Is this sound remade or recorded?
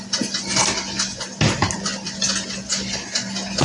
recorded